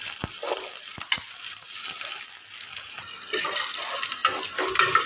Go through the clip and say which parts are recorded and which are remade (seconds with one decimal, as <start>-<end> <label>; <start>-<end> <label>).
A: 0.0-5.1 recorded